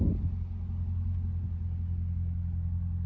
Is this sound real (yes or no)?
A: yes